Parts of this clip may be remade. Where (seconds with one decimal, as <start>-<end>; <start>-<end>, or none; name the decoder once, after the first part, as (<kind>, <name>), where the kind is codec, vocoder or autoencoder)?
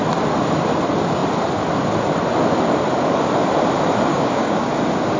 4.1-4.7 (codec, DAC)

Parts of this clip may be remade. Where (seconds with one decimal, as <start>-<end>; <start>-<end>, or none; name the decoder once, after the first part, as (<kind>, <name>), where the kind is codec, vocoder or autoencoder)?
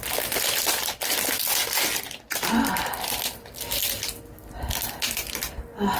none